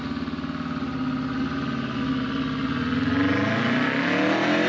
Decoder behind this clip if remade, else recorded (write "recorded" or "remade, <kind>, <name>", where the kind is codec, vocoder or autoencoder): recorded